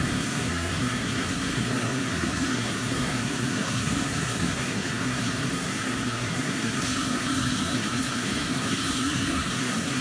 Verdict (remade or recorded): remade